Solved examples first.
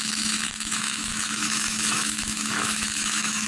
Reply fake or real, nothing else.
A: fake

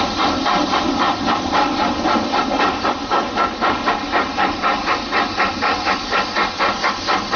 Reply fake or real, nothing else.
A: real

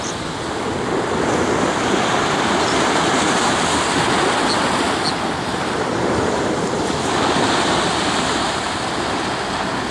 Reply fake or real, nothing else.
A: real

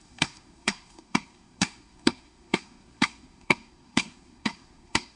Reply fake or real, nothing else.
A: fake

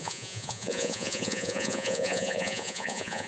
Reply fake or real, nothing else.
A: fake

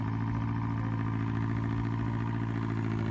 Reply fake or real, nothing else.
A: real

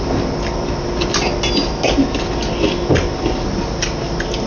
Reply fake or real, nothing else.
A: real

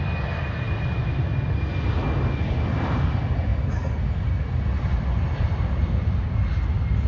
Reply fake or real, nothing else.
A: real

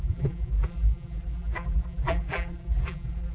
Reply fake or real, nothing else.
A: fake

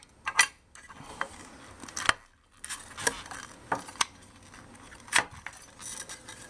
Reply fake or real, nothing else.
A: real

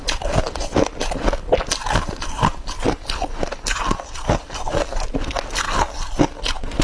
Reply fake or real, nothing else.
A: real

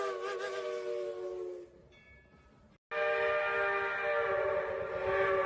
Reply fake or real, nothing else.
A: real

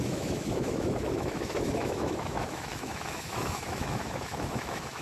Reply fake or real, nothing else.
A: fake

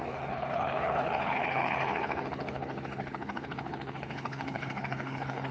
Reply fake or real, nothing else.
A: fake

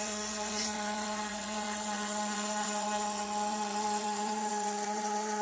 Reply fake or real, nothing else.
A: fake